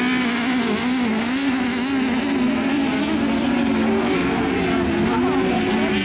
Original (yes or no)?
yes